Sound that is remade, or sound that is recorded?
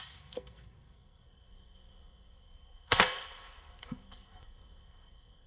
remade